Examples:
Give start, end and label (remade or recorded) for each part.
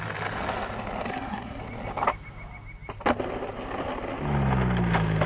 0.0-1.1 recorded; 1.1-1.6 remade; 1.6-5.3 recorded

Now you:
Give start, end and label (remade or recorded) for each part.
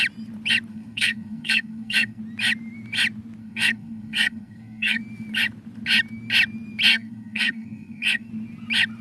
0.0-0.7 recorded; 0.7-2.2 remade; 2.2-3.4 recorded; 3.4-5.0 remade; 5.0-6.9 recorded; 6.9-8.3 remade; 8.3-9.0 recorded